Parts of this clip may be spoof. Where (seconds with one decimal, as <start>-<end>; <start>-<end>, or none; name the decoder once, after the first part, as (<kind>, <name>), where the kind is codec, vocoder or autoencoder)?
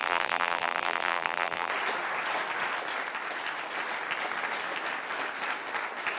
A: 0.0-1.7 (vocoder, BigVGAN v2)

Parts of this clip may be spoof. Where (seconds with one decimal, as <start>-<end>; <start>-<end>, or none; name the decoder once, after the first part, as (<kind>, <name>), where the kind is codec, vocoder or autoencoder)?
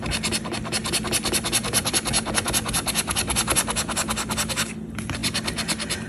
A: none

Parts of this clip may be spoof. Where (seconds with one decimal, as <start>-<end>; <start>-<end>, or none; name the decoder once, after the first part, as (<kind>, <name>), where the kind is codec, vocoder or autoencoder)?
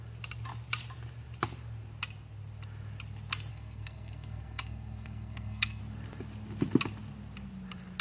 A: 3.5-5.8 (codec, SNAC)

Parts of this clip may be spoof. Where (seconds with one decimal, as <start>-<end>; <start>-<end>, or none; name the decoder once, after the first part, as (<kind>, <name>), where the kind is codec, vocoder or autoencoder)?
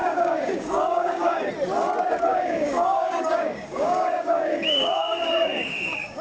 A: 0.0-1.5 (codec, DAC); 2.3-6.2